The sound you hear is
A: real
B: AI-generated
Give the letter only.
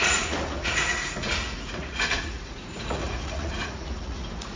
B